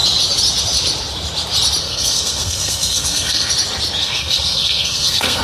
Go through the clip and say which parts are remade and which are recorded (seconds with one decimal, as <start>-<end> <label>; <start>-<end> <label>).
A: 0.0-1.8 recorded; 1.8-3.5 remade; 3.5-4.0 recorded; 4.0-5.4 remade